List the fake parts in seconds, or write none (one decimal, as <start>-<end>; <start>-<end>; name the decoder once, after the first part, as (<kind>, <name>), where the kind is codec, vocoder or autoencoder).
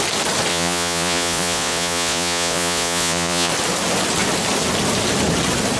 0.5-3.5 (vocoder, Vocos)